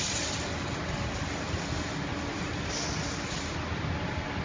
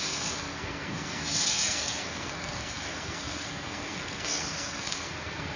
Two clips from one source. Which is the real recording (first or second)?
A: first